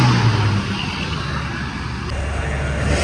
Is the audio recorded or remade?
recorded